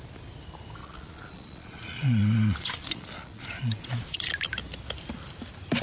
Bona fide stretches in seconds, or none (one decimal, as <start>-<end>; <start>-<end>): 0.0-0.8; 4.3-5.8